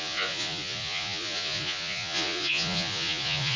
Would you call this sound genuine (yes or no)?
no